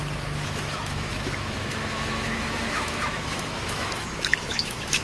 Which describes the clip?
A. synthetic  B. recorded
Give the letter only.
A